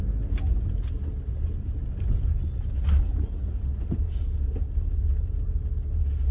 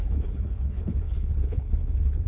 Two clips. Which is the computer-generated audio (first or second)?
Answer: second